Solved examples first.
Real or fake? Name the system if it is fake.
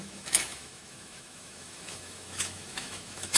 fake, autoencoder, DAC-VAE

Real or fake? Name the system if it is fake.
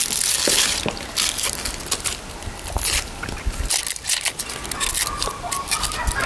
real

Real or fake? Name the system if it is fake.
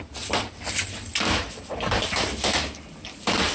real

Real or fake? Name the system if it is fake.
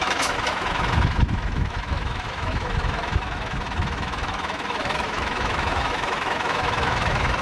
fake, autoencoder, DAC-VAE